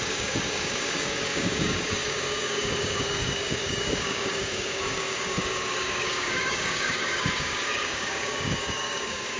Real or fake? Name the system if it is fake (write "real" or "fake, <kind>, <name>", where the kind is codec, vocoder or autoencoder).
fake, codec, DAC